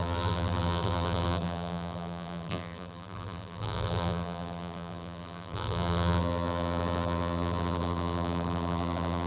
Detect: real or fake fake